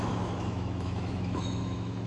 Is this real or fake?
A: fake